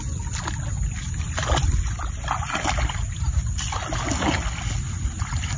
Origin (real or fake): real